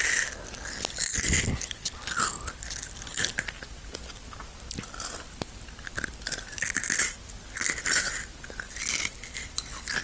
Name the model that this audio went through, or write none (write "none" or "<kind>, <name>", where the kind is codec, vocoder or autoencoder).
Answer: none